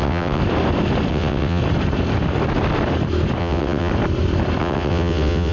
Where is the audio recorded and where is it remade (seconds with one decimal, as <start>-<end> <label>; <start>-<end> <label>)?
0.0-0.4 remade; 0.4-1.1 recorded; 1.1-1.6 remade; 1.6-3.4 recorded; 3.4-3.9 remade; 3.9-4.6 recorded; 4.6-5.5 remade